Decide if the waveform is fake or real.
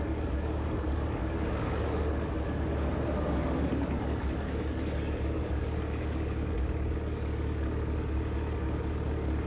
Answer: fake